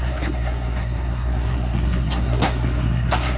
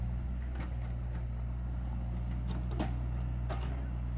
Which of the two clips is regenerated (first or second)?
first